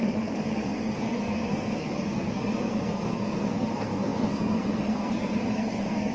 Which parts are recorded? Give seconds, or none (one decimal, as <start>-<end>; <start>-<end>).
none